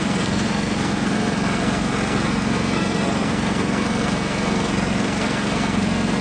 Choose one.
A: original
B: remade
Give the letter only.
B